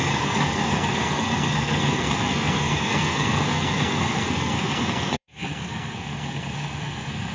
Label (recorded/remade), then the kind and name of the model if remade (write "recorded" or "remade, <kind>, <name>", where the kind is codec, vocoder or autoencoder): remade, codec, SNAC